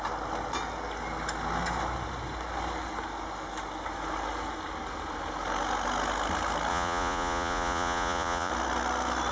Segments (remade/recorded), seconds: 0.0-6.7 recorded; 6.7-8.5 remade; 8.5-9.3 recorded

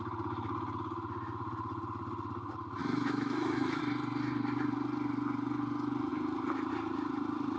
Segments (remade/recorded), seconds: 0.0-2.8 recorded; 2.8-3.8 remade; 3.8-7.6 recorded

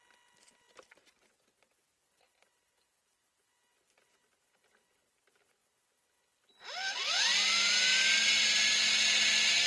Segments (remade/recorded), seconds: 0.0-9.7 recorded

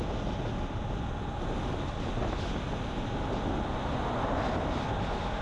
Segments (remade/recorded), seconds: 0.0-5.4 recorded

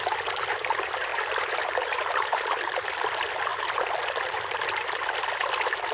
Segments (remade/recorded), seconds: 0.0-1.1 recorded; 1.1-2.5 remade; 2.5-5.9 recorded

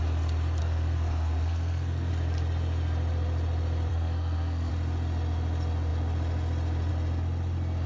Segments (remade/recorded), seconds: 0.0-0.6 recorded; 0.6-2.1 remade; 2.1-3.9 recorded; 3.9-4.7 remade; 4.7-7.9 recorded

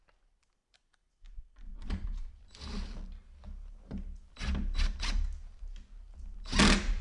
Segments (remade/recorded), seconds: 0.0-0.6 recorded; 0.6-2.3 remade; 2.3-7.0 recorded